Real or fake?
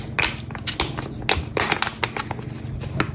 real